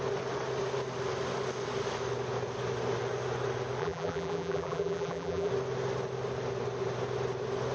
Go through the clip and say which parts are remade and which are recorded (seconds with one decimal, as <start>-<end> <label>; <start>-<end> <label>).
0.0-3.8 recorded; 3.8-5.5 remade; 5.5-7.7 recorded